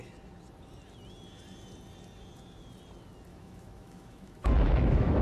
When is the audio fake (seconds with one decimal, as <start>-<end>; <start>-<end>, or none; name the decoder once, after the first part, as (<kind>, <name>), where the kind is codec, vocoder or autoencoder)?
3.3-5.2 (autoencoder, DAC-VAE)

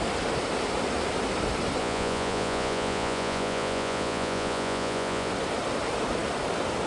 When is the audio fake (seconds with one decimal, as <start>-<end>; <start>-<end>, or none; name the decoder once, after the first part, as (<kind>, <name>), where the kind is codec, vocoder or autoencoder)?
1.8-5.3 (vocoder, Vocos)

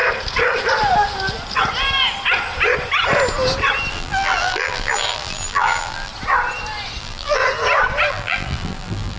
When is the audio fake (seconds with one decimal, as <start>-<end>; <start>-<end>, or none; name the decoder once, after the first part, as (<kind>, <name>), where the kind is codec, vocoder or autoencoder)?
3.9-6.1 (vocoder, BigVGAN v2); 7.0-7.4; 8.1-9.2

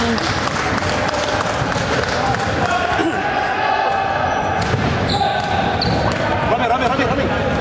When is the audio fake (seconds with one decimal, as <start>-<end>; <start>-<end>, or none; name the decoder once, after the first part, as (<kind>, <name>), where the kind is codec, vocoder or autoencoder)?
3.0-5.1 (vocoder, Vocos)

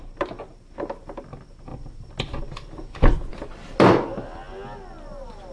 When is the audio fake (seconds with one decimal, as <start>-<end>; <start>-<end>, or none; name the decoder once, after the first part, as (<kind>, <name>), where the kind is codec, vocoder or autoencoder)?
1.7-3.3 (vocoder, BigVGAN v2)

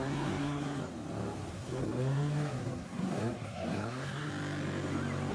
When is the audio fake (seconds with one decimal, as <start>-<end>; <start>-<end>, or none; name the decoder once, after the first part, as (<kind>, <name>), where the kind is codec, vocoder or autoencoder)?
0.0-0.8 (codec, SNAC); 1.5-4.3